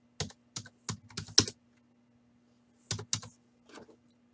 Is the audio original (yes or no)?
yes